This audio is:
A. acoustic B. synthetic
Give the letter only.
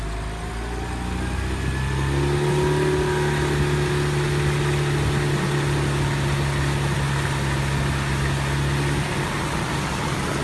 A